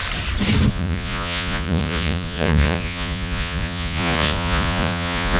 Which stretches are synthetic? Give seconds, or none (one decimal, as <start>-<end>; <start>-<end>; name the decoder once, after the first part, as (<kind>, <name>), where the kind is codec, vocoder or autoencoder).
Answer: 0.7-5.4 (vocoder, Vocos)